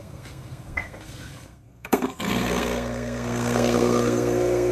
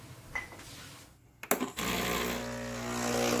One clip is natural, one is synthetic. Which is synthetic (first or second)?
first